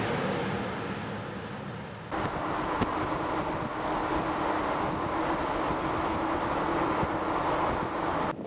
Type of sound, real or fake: real